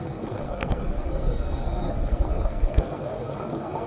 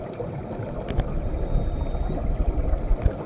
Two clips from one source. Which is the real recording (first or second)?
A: second